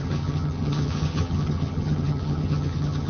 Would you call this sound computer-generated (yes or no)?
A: yes